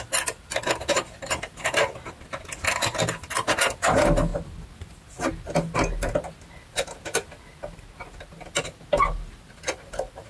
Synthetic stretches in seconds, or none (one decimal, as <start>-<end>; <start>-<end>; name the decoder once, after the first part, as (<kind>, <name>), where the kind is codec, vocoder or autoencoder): none